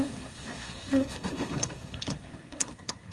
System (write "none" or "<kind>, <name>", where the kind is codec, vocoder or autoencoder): codec, SNAC